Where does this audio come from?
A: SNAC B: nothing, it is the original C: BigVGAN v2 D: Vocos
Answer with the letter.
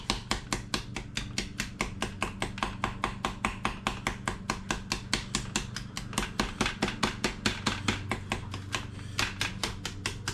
B